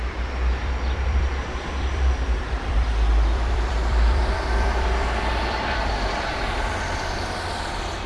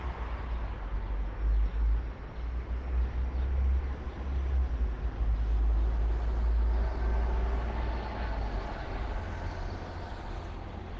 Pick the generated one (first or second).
first